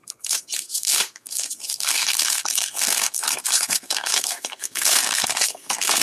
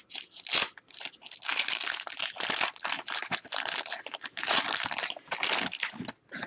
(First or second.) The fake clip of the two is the first